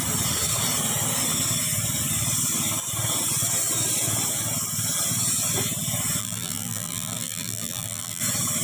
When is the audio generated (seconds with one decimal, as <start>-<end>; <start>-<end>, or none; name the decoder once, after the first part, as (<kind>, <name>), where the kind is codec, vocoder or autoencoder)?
6.2-8.2 (vocoder, BigVGAN v2)